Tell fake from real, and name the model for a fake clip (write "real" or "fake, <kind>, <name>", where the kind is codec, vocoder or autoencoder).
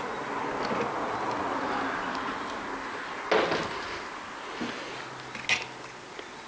real